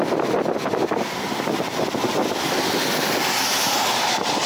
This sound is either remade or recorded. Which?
recorded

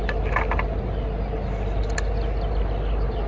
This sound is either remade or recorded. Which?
recorded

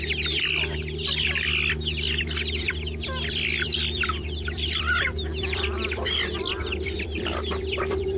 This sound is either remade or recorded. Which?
remade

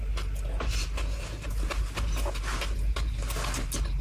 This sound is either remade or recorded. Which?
recorded